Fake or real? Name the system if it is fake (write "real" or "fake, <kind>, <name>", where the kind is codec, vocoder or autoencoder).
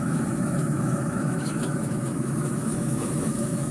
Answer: fake, autoencoder, DAC-VAE